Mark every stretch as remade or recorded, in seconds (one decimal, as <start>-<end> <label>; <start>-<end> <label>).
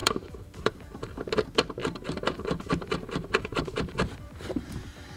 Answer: 0.0-1.2 remade; 1.2-1.8 recorded; 1.8-5.2 remade